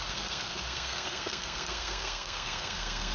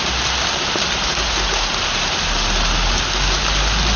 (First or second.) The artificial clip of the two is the first